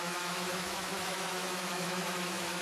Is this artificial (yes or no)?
yes